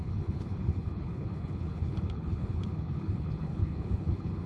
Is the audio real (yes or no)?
no